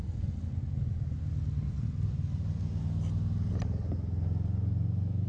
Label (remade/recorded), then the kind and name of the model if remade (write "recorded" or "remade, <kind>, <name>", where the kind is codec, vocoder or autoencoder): recorded